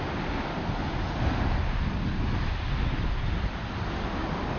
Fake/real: real